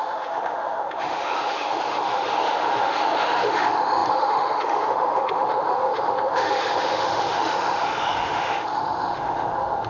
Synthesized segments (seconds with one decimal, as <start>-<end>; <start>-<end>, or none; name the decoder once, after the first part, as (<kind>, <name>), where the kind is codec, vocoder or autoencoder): 0.0-9.9 (autoencoder, DAC-VAE)